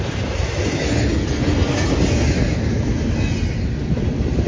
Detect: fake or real real